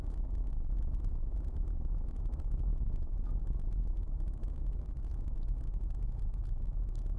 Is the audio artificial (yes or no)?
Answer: yes